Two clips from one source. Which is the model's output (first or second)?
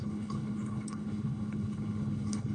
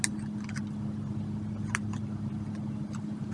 first